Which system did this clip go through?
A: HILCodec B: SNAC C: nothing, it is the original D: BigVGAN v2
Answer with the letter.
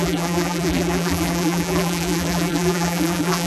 D